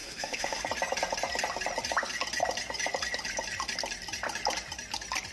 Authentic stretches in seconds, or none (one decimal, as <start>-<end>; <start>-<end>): 0.6-5.3